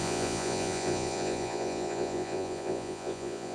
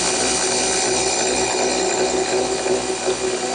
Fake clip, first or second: first